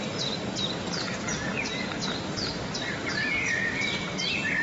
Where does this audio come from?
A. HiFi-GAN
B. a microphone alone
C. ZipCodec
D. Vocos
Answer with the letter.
B